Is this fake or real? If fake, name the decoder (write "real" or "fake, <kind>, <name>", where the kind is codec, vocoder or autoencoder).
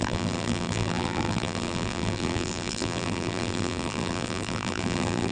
fake, vocoder, BigVGAN v2